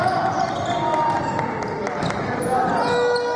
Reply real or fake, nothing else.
real